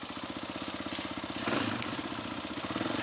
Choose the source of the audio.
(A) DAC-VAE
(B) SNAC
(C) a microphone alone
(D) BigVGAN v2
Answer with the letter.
D